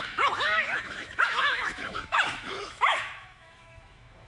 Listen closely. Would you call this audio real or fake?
fake